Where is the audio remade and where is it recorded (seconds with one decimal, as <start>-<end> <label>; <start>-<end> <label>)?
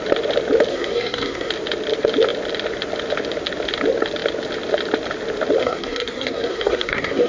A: 0.0-0.7 recorded; 0.7-1.5 remade; 1.5-5.6 recorded; 5.6-7.3 remade